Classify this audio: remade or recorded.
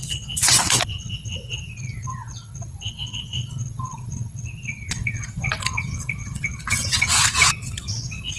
remade